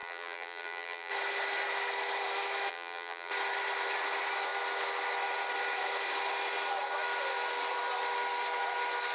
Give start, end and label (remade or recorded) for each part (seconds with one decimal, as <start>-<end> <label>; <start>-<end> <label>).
0.0-1.1 remade; 1.1-2.7 recorded; 2.7-3.3 remade; 3.3-9.1 recorded